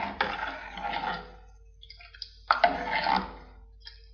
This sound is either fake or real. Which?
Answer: real